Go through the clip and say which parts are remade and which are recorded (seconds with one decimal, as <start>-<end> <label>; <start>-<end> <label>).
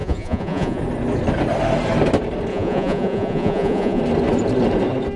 0.0-0.8 remade; 0.8-2.5 recorded; 2.5-4.0 remade; 4.0-5.2 recorded